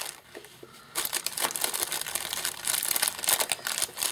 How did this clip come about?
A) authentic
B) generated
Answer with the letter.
A